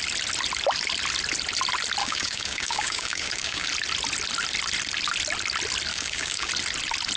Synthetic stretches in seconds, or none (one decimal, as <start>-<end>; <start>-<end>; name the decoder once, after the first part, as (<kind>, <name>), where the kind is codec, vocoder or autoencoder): 2.0-3.7 (codec, DAC); 5.9-6.5